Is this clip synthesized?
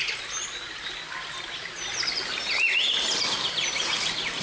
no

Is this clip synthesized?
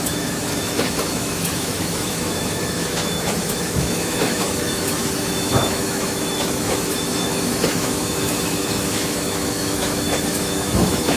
yes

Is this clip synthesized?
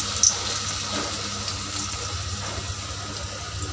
no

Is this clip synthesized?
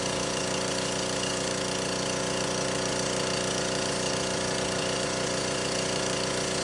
yes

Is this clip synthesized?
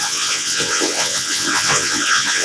yes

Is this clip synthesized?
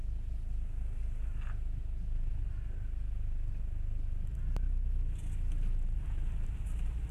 no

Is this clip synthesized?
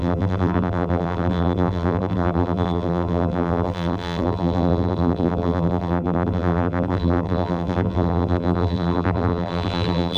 yes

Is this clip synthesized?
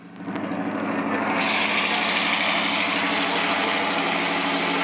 no